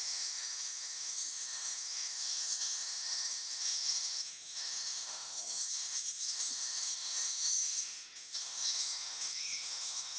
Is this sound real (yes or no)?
no